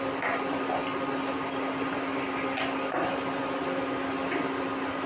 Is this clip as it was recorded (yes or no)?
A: yes